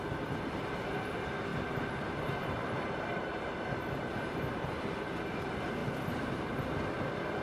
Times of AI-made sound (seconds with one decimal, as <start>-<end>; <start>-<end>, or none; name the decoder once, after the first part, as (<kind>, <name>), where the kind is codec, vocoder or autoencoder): 1.5-4.7 (vocoder, BigVGAN v2); 5.8-6.7